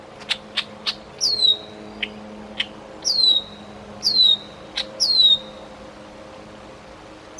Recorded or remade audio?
recorded